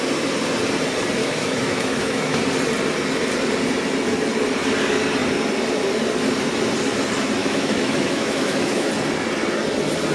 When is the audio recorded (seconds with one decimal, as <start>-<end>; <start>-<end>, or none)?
0.0-1.2; 2.4-7.4; 8.9-10.1